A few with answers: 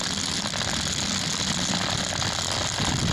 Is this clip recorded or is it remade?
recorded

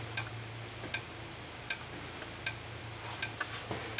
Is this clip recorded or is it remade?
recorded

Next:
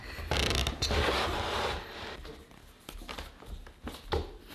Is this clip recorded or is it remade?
recorded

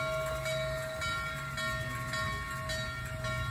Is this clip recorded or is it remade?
recorded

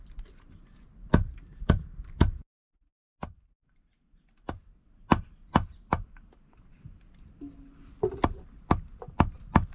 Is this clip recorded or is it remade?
recorded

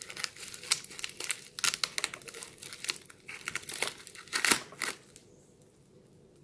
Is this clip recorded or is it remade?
recorded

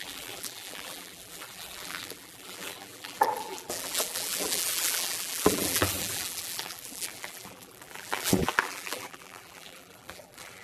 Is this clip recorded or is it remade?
remade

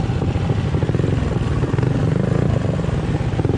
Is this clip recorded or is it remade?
recorded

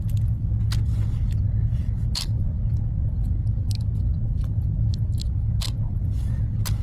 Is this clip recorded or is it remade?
recorded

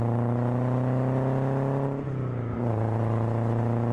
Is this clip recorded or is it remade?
recorded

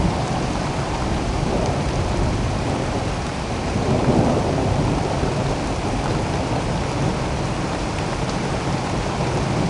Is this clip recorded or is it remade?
remade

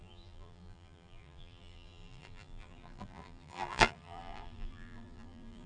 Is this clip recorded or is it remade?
remade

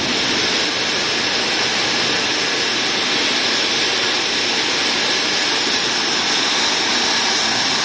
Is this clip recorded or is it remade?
recorded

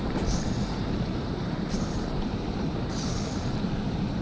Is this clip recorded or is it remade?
remade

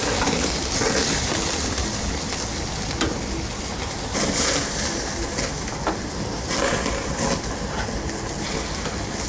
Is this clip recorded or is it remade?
recorded